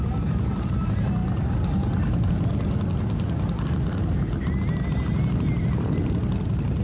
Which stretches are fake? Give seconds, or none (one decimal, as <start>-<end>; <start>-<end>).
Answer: none